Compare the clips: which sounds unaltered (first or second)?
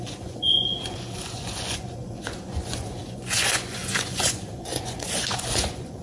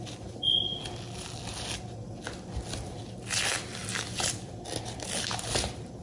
second